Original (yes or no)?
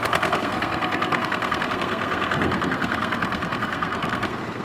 no